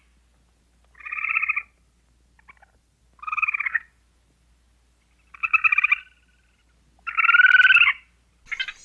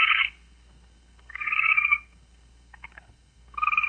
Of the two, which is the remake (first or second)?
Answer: second